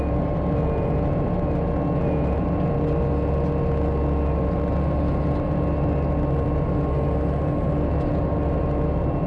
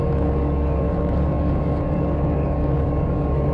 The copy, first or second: second